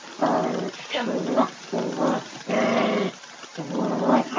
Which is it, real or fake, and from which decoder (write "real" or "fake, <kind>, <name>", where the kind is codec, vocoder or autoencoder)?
real